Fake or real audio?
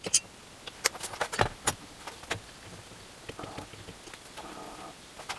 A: real